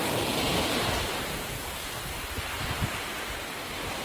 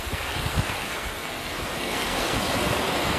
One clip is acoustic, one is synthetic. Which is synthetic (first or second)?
second